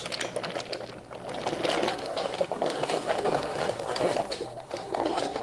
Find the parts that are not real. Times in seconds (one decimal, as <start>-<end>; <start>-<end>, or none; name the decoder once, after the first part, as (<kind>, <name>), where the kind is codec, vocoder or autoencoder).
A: 1.9-5.4 (codec, SNAC)